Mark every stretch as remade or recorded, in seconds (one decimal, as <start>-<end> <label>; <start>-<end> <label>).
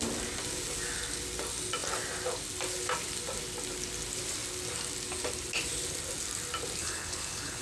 0.0-6.8 recorded; 6.8-7.6 remade